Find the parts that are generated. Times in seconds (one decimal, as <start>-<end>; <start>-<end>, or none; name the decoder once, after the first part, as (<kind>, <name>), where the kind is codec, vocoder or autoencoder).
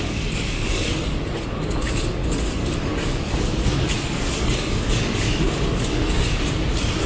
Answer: 0.0-7.1 (codec, DAC)